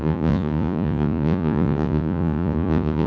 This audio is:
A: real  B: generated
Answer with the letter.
B